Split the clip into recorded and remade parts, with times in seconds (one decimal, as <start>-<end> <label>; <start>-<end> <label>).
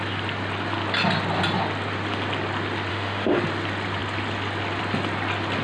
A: 0.0-2.9 recorded; 2.9-3.4 remade; 3.4-5.6 recorded